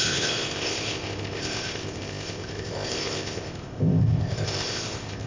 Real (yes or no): no